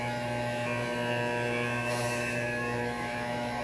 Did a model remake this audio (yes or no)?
yes